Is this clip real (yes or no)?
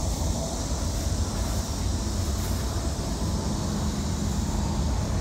yes